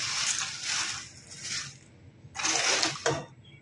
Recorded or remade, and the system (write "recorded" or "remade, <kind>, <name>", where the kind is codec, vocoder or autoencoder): recorded